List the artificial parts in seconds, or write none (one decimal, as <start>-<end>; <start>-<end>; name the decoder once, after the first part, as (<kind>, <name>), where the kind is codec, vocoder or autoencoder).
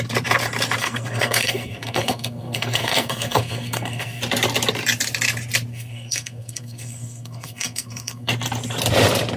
0.8-4.2 (codec, SNAC); 5.7-8.3